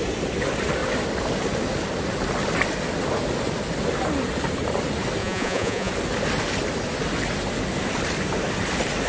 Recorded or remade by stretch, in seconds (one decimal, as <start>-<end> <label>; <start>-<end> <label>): 0.0-5.2 recorded; 5.2-5.9 remade; 5.9-9.1 recorded